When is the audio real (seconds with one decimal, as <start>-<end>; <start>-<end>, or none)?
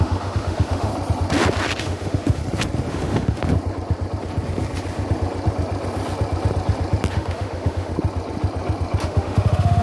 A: 0.9-1.8; 2.4-2.9; 3.4-7.1; 7.9-9.0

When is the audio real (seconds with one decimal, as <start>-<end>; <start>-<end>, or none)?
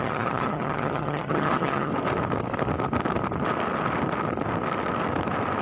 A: 1.9-5.6